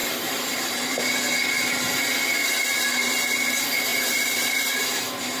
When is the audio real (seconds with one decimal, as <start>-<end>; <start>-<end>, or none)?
1.2-2.4; 3.1-3.9